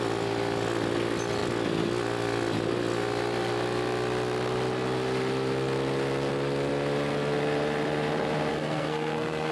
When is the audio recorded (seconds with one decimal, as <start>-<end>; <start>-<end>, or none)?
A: 0.0-8.5